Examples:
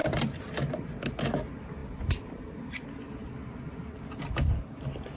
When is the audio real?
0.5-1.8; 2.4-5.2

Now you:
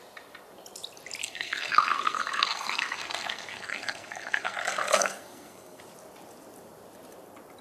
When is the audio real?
0.0-1.2; 5.8-7.6

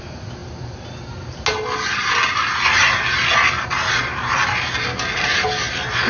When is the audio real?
0.0-6.1